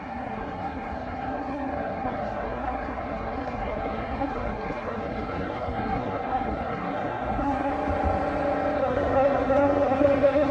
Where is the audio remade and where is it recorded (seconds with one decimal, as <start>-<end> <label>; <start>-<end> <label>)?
0.0-7.7 remade; 7.7-8.8 recorded; 8.8-10.5 remade